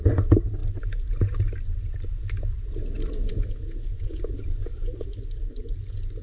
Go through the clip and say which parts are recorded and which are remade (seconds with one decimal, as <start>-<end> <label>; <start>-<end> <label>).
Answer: 0.0-6.2 recorded